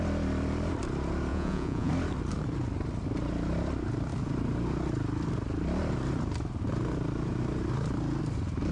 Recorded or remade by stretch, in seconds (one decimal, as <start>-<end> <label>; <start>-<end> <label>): 0.0-1.3 recorded; 1.3-1.9 remade; 1.9-8.7 recorded

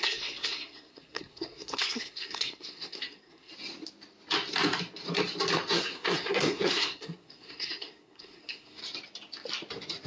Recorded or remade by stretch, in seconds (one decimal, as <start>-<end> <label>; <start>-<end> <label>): 0.0-3.5 remade; 3.5-5.7 recorded; 5.7-8.8 remade; 8.8-10.1 recorded

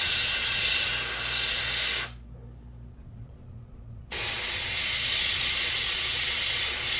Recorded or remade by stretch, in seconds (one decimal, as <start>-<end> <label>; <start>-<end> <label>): 0.0-0.9 remade; 0.9-2.9 recorded; 2.9-7.0 remade

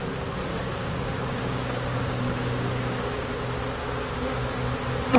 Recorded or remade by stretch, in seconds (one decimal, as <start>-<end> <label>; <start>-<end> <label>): 0.0-0.5 recorded; 0.5-3.3 remade; 3.3-5.2 recorded

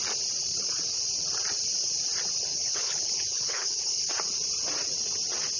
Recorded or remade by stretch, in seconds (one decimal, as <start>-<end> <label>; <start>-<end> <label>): 0.0-2.5 recorded; 2.5-4.1 remade; 4.1-5.6 recorded